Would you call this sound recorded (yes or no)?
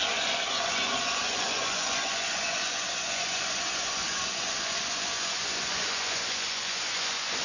no